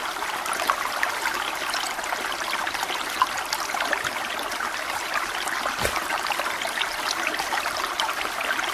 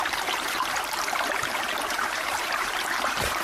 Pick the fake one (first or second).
second